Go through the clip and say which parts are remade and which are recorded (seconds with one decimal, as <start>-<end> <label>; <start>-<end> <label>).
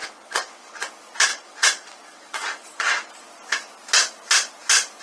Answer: 0.0-0.9 remade; 0.9-1.3 recorded; 1.3-3.1 remade; 3.1-5.0 recorded